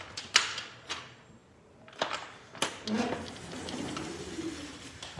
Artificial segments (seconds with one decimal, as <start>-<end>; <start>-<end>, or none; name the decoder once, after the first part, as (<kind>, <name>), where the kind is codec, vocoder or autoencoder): none